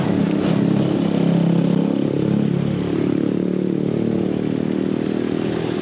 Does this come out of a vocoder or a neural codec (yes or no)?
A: no